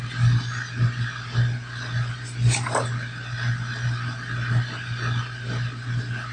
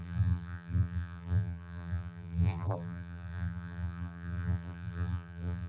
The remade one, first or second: second